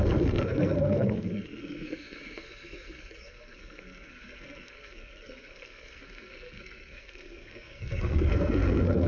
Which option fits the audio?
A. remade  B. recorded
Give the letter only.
A